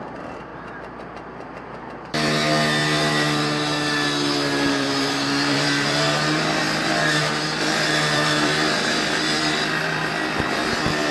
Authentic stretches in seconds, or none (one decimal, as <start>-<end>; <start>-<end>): 0.5-4.7; 10.6-11.1